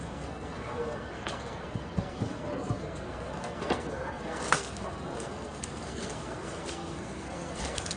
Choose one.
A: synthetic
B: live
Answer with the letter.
A